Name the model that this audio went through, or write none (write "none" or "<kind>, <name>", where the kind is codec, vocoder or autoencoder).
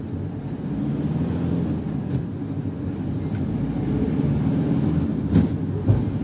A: none